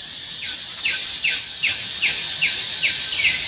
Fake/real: fake